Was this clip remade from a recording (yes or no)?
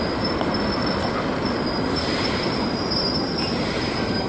no